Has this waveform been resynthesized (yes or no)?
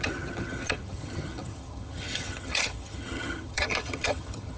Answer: yes